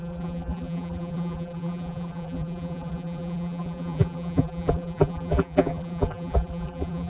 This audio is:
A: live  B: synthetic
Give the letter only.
B